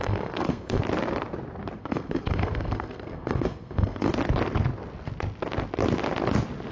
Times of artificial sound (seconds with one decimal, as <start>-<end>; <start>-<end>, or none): 0.0-0.8; 1.8-4.1